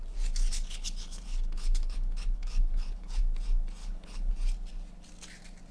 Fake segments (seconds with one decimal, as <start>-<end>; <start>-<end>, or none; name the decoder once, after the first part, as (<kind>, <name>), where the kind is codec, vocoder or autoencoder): 0.5-3.2 (codec, HILCodec); 3.8-4.3